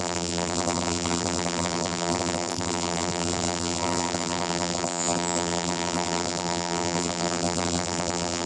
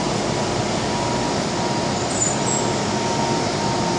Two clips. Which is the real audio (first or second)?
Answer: second